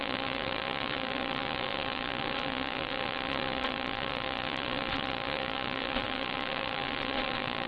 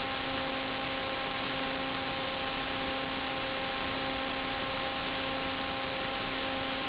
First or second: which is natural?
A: second